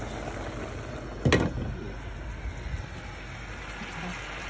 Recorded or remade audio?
recorded